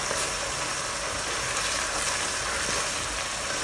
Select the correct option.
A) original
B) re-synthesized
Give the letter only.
A